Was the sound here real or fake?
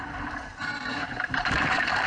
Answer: fake